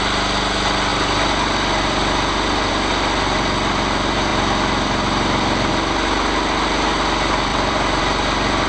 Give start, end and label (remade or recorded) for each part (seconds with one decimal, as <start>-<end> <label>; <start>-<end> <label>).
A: 0.0-0.9 recorded; 0.9-2.7 remade; 2.7-4.3 recorded; 4.3-5.7 remade; 5.7-7.5 recorded; 7.5-8.0 remade; 8.0-8.7 recorded